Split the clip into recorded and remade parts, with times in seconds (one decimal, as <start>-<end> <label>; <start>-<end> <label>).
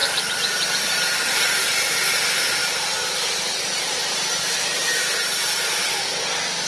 0.0-0.6 remade; 0.6-2.6 recorded; 2.6-5.0 remade; 5.0-6.7 recorded